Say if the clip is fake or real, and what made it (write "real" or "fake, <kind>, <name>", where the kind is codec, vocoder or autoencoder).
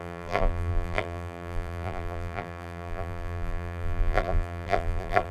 fake, vocoder, BigVGAN v2